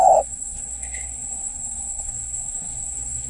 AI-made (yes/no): yes